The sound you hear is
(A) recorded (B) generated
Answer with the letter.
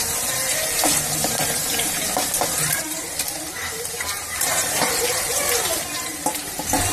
B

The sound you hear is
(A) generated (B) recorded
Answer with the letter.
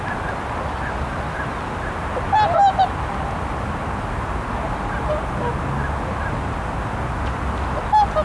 B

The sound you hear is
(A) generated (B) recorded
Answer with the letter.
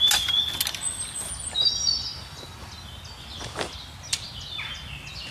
B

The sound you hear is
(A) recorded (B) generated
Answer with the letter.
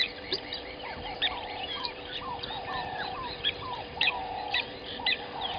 B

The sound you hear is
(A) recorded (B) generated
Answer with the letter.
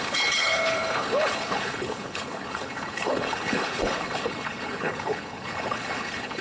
B